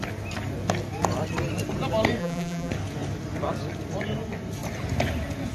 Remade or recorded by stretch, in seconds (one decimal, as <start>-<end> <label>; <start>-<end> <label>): 0.0-2.2 recorded; 2.2-2.7 remade; 2.7-5.5 recorded